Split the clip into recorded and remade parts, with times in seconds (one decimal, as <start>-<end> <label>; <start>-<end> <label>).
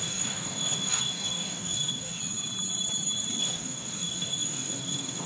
0.0-2.2 remade; 2.2-3.4 recorded; 3.4-5.3 remade